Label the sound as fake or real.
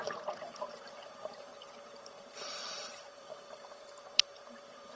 fake